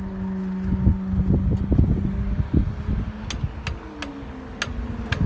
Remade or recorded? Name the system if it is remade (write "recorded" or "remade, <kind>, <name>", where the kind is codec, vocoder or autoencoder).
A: recorded